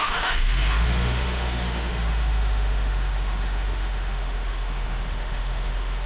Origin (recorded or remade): remade